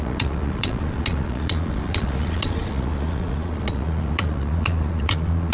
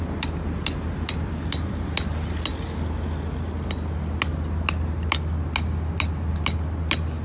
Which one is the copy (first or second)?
first